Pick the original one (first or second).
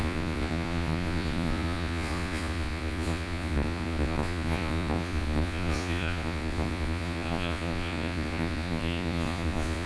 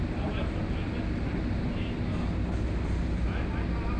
second